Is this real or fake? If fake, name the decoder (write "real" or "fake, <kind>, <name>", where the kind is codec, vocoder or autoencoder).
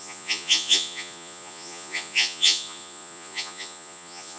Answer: fake, vocoder, Vocos